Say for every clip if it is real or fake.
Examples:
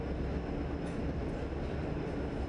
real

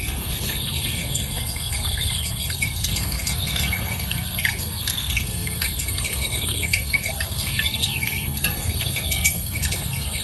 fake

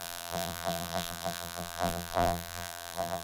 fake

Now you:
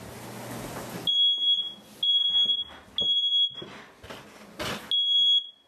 real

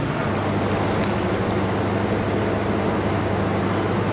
real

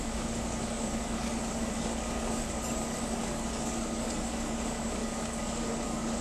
fake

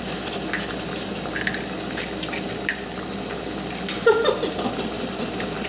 real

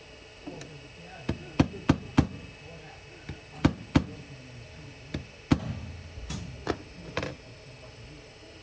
real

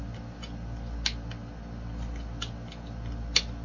real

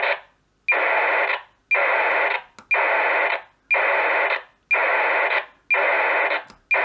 real